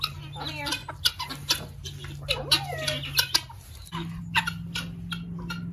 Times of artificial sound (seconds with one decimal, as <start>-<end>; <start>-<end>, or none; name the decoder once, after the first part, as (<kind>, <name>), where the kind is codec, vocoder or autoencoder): none